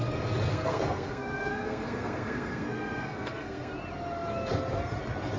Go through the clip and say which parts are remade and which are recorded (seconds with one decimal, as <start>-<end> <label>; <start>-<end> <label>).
0.0-0.5 recorded; 0.5-3.7 remade; 3.7-5.4 recorded